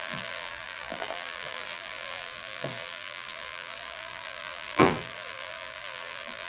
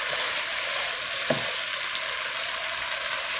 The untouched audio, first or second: second